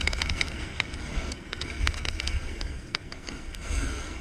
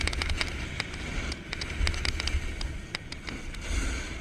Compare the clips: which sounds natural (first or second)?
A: second